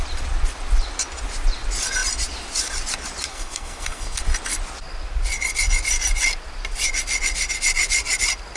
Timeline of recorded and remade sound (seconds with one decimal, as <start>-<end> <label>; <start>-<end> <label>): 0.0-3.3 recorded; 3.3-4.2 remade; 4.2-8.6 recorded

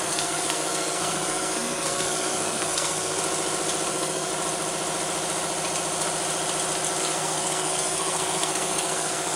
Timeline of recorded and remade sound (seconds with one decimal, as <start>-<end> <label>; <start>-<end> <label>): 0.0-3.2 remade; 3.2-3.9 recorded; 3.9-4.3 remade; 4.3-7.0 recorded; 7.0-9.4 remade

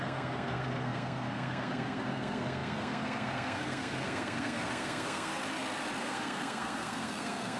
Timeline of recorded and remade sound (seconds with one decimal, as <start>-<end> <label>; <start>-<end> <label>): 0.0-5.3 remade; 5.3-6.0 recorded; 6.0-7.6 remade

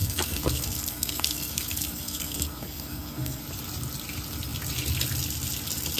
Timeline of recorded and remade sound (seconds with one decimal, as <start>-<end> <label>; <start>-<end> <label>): 0.0-3.4 remade; 3.4-6.0 recorded

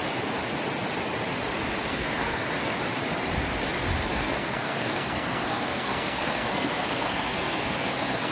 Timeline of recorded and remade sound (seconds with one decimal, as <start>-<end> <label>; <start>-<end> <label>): 0.0-1.9 recorded; 1.9-2.5 remade; 2.5-4.1 recorded; 4.1-8.3 remade

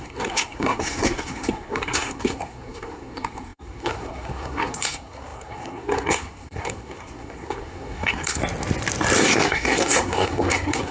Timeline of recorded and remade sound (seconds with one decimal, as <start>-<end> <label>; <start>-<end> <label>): 0.0-8.4 remade; 8.4-9.2 recorded; 9.2-10.9 remade

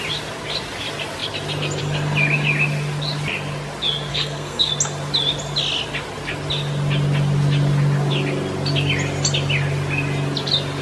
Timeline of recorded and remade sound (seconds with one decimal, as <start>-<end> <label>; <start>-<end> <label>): 0.0-4.1 recorded; 4.1-4.7 remade; 4.7-10.8 recorded

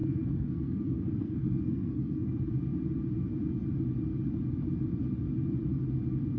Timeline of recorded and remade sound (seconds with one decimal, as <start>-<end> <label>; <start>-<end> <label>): 0.0-2.5 remade; 2.5-6.4 recorded